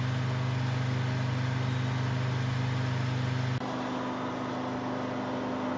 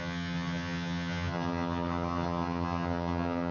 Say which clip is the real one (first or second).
first